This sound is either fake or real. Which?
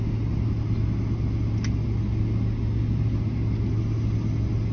real